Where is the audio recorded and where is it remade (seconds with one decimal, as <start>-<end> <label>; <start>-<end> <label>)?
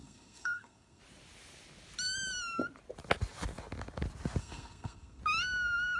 0.0-1.0 remade; 1.0-4.4 recorded; 4.4-5.2 remade; 5.2-6.0 recorded